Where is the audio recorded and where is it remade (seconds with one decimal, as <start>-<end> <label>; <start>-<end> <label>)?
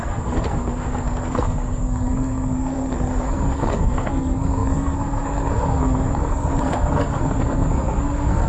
0.0-8.5 remade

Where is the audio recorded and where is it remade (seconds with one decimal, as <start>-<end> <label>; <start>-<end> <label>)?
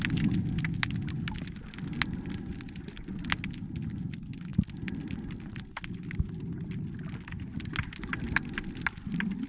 0.0-9.5 recorded